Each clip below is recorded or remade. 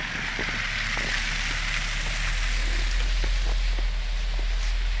recorded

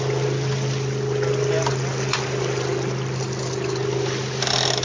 recorded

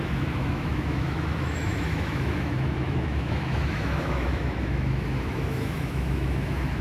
remade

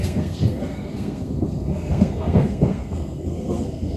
remade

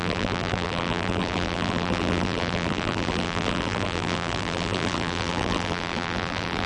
remade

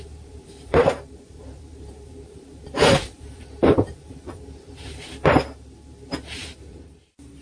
remade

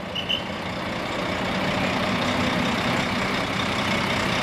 recorded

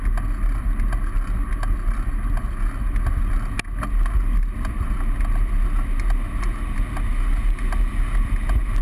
recorded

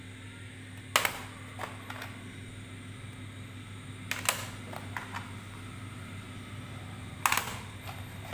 recorded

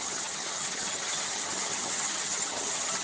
remade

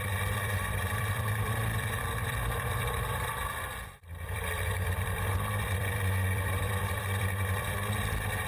remade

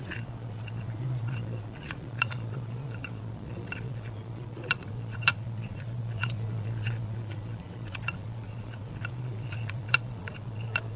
remade